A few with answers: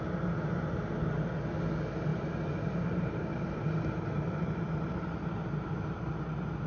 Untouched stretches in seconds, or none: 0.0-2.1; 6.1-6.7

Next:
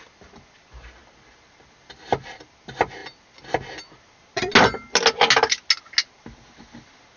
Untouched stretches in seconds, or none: 0.0-7.2

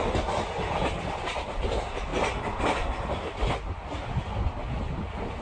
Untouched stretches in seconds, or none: 0.0-5.4